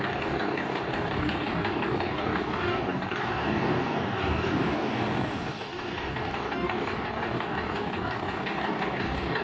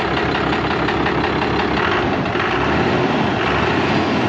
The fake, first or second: first